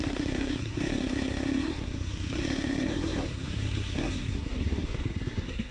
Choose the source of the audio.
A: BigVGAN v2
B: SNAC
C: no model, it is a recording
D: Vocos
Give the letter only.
B